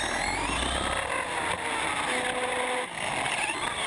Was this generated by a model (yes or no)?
no